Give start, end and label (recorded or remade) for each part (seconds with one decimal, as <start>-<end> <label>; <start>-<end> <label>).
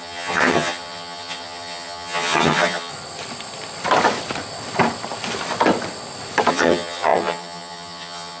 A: 0.0-2.9 remade; 2.9-6.5 recorded; 6.5-8.4 remade